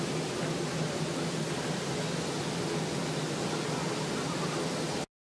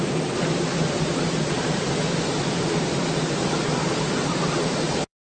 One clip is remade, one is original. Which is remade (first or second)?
second